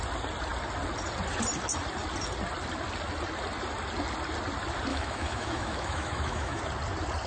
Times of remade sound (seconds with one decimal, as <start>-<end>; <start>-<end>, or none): 4.9-6.6